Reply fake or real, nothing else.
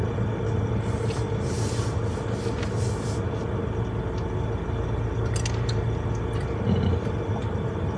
real